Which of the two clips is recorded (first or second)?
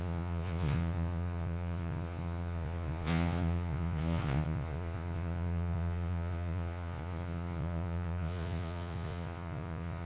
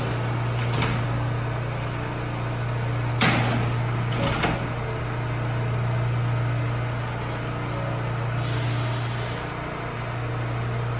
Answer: second